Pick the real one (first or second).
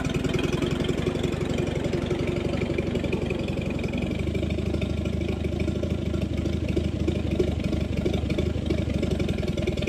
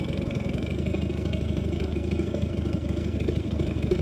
first